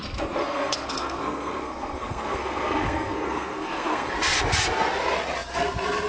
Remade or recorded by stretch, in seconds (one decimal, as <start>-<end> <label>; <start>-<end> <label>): 0.0-0.4 recorded; 0.4-4.1 remade; 4.1-6.1 recorded